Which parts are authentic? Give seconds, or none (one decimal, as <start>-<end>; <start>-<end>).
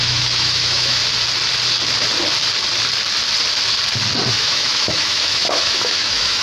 1.0-4.3